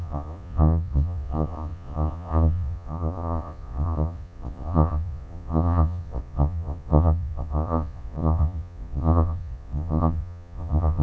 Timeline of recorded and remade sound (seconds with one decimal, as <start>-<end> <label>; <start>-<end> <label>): 0.0-11.0 remade